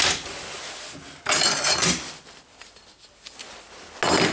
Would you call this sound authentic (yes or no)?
yes